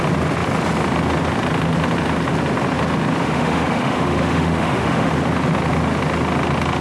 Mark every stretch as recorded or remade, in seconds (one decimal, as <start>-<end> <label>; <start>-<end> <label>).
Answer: 0.0-3.2 recorded; 3.2-5.1 remade; 5.1-6.8 recorded